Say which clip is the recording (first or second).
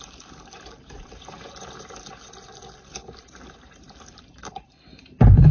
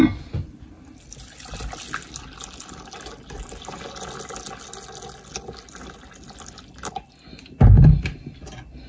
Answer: second